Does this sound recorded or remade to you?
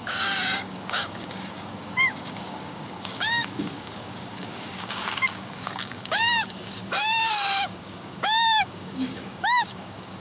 remade